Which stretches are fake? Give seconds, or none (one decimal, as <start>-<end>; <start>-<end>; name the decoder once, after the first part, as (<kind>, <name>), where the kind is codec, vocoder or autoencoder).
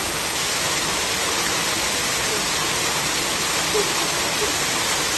none